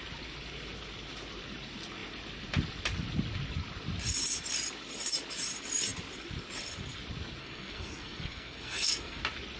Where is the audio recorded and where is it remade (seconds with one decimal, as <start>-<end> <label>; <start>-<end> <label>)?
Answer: 0.0-7.4 recorded; 7.4-9.2 remade; 9.2-9.6 recorded